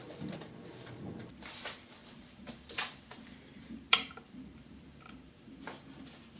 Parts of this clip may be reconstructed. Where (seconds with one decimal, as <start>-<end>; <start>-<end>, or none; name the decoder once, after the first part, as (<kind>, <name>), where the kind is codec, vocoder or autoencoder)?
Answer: 0.0-1.3 (vocoder, BigVGAN v2); 2.0-5.5